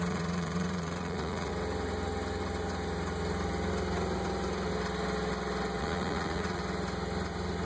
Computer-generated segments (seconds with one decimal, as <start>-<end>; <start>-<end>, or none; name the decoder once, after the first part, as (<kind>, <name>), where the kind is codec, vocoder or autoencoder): 0.0-1.5 (vocoder, Vocos); 5.8-6.6

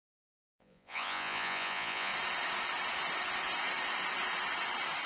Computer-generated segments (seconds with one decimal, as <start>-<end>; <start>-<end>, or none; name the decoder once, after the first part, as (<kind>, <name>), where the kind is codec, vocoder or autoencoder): 0.0-2.1 (vocoder, Vocos)

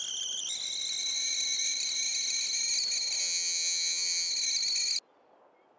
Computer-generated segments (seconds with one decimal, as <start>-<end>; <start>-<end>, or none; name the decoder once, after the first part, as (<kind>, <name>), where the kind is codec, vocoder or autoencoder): 3.2-4.3 (vocoder, HiFi-GAN)

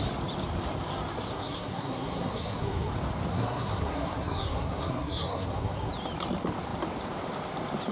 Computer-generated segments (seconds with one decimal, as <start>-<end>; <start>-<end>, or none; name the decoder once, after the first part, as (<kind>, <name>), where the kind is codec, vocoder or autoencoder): 1.3-2.9 (codec, SNAC); 3.3-5.9

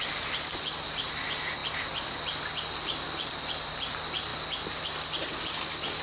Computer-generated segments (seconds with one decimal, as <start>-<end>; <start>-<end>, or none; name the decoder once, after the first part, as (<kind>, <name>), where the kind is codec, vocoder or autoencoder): none

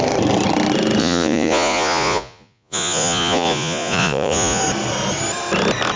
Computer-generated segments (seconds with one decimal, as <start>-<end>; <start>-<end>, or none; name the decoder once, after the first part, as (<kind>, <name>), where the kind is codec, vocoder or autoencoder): 1.0-4.6 (vocoder, Vocos)

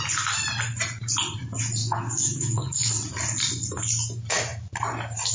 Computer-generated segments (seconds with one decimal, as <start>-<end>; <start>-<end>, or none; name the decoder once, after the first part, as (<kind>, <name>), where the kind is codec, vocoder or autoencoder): 1.8-2.9 (autoencoder, DAC-VAE)

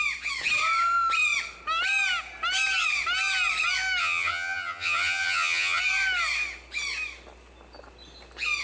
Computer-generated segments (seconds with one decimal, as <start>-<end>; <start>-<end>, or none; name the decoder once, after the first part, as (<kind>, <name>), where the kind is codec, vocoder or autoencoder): 4.0-5.8 (vocoder, HiFi-GAN)